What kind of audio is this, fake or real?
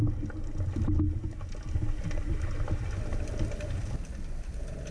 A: real